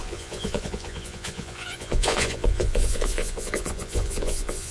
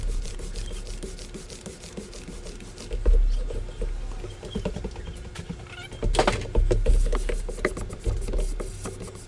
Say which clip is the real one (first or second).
second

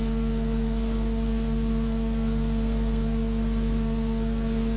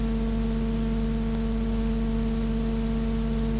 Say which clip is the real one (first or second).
second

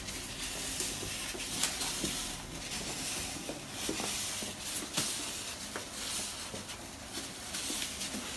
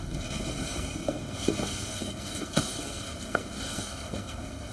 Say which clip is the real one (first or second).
first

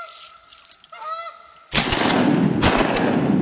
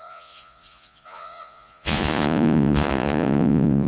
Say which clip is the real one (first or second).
first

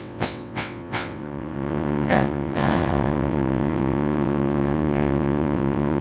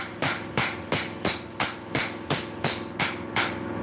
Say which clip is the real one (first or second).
second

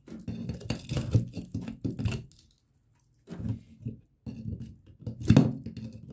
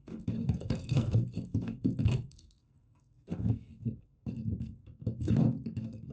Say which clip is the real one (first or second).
first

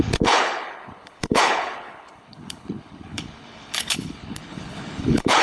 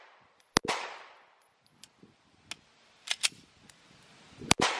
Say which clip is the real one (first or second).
second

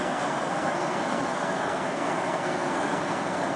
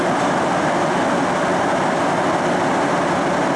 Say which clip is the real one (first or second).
second